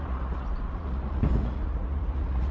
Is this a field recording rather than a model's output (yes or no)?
no